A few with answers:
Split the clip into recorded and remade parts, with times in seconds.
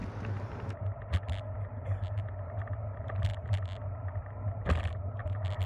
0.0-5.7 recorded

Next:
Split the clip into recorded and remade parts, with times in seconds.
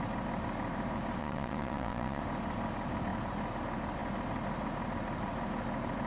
0.0-1.2 recorded; 1.2-2.2 remade; 2.2-6.1 recorded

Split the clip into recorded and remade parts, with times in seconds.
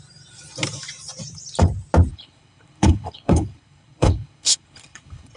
0.0-2.1 recorded; 2.1-5.4 remade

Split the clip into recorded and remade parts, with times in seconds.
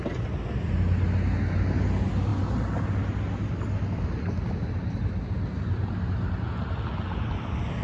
0.0-7.8 recorded